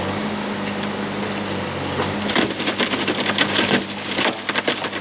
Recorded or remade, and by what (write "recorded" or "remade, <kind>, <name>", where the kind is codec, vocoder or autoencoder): recorded